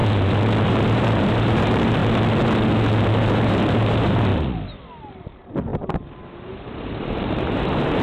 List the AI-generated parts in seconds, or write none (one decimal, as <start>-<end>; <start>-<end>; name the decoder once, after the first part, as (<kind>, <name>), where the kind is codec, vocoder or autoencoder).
0.7-2.0 (vocoder, BigVGAN v2); 3.0-4.3; 5.1-5.7; 6.5-8.0